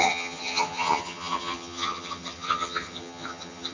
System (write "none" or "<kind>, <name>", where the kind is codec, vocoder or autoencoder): vocoder, HiFi-GAN